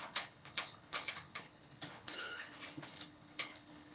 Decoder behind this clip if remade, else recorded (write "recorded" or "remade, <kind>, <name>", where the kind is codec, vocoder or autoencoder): remade, codec, HILCodec